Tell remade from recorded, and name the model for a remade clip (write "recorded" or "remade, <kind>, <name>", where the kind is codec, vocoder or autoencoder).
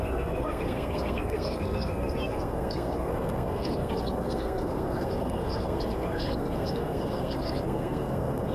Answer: remade, codec, SNAC